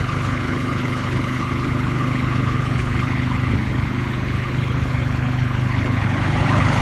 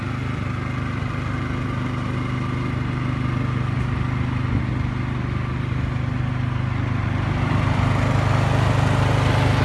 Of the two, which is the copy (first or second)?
first